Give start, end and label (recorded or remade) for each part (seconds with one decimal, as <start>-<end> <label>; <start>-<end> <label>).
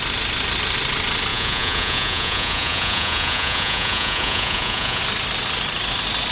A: 0.0-1.3 recorded; 1.3-5.0 remade; 5.0-6.3 recorded